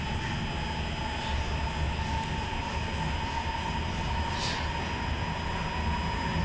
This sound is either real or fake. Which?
real